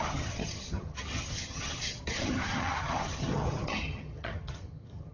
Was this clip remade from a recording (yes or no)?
yes